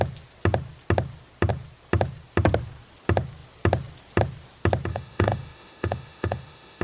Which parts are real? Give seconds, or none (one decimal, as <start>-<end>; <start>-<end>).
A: 0.0-4.9

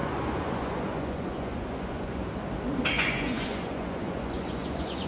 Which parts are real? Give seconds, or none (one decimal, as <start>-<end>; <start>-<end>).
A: 2.2-2.9

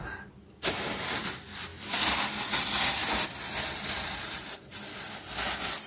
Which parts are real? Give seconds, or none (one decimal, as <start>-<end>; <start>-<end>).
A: 0.0-5.9

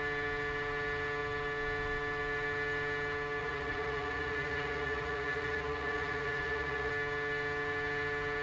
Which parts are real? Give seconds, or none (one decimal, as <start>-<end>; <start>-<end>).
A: 0.0-3.4; 6.9-8.4

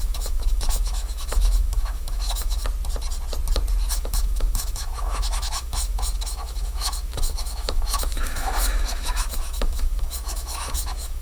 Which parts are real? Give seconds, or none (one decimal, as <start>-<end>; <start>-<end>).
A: 2.6-3.9

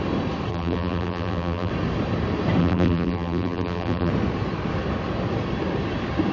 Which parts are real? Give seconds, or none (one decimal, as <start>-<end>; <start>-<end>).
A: 0.0-0.5; 1.7-2.6; 4.1-6.3

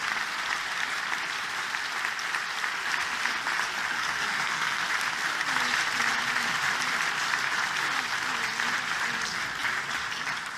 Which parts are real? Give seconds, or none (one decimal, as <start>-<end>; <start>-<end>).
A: 0.0-3.9; 4.8-10.6